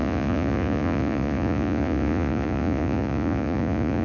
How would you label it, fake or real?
fake